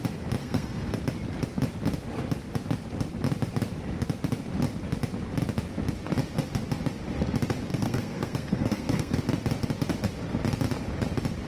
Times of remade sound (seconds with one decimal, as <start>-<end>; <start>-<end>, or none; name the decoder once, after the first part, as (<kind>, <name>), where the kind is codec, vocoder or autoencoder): 0.4-1.0 (codec, SNAC); 7.7-9.2

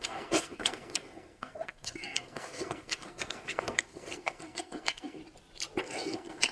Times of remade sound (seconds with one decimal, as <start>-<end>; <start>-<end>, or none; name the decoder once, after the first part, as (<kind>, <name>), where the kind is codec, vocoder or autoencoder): 0.0-5.2 (codec, SNAC); 5.8-6.5

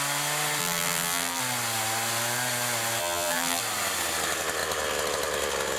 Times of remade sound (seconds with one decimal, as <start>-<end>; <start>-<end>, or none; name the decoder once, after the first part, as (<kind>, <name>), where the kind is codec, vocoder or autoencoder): 0.6-1.4 (vocoder, BigVGAN v2); 3.0-3.6